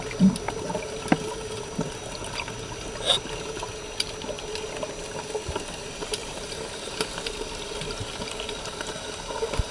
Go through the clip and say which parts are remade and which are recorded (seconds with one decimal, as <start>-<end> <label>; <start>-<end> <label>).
0.0-6.2 recorded; 6.2-8.8 remade; 8.8-9.7 recorded